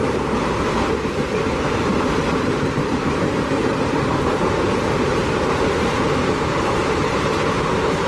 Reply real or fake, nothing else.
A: fake